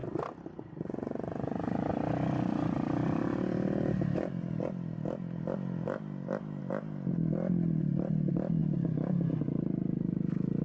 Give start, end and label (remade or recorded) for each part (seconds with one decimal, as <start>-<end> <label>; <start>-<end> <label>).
0.0-0.6 remade; 0.6-1.9 recorded; 1.9-6.6 remade; 6.6-10.6 recorded